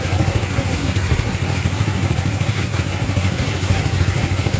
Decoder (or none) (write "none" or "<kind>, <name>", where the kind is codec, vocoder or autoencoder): codec, SNAC